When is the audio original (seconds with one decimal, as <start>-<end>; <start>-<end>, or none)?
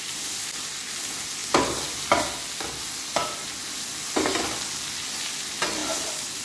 0.0-6.4